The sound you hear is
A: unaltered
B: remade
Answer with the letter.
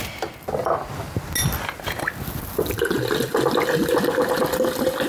A